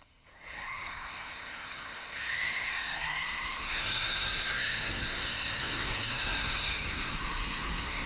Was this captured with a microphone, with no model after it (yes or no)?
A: no